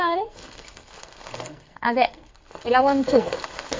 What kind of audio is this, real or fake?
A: fake